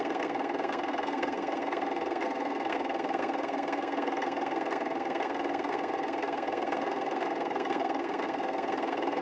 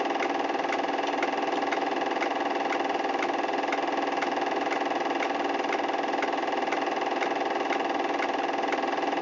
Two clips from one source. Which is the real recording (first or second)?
second